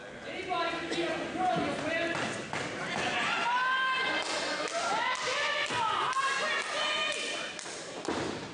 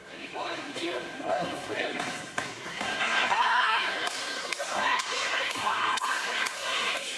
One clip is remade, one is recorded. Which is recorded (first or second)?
first